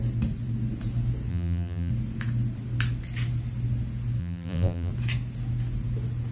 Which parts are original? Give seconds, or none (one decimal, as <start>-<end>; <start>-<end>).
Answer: 0.0-1.3; 1.9-4.2; 4.9-6.3